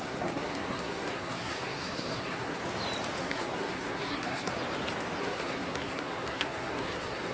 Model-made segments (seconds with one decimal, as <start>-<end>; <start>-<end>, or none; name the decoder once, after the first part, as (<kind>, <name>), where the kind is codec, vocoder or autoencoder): 0.0-2.6 (codec, SNAC); 3.2-4.5; 5.2-7.3